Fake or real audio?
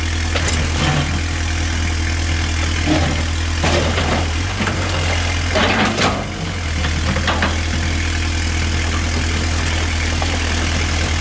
real